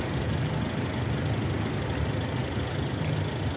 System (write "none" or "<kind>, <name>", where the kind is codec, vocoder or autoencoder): none